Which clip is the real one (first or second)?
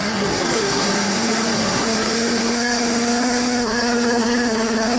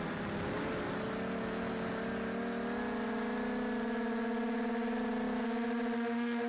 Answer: second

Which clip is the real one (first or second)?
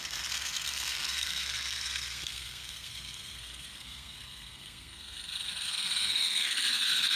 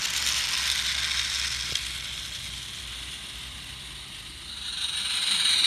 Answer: second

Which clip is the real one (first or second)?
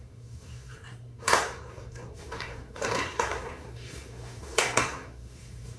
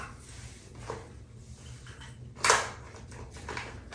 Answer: second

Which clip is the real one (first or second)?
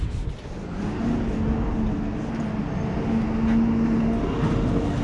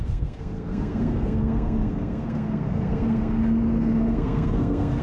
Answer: first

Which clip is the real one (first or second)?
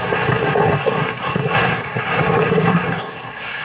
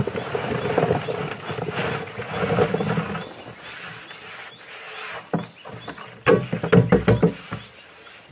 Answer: second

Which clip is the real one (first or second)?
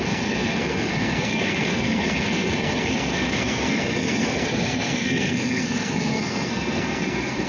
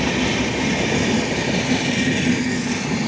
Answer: second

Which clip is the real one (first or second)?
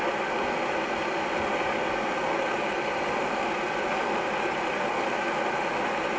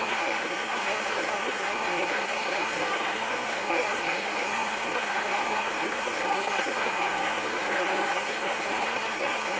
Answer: first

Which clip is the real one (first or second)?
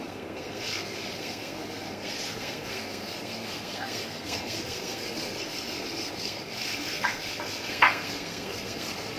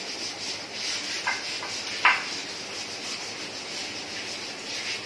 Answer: second